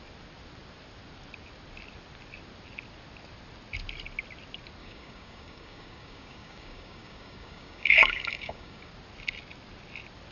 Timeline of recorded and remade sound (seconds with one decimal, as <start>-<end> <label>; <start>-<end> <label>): 0.0-4.8 recorded; 4.8-8.9 remade; 8.9-10.3 recorded